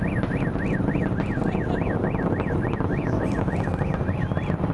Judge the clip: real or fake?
real